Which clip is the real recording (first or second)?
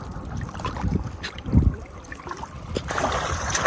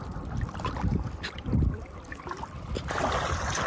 second